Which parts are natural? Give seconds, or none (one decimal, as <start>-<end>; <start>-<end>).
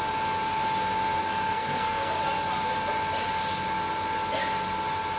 0.0-1.2; 2.2-5.2